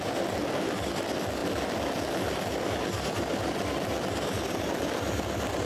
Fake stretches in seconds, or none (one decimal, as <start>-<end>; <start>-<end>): none